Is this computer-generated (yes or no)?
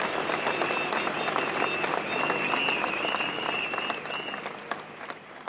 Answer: no